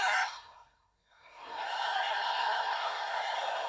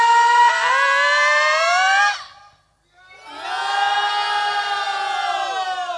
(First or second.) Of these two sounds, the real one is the second